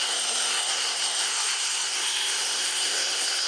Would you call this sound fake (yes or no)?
yes